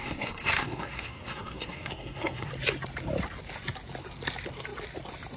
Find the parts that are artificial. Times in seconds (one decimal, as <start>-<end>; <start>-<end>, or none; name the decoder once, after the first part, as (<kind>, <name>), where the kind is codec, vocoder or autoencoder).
0.0-2.5 (codec, SNAC)